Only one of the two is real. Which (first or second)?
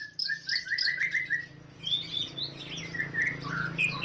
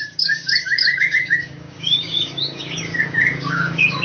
first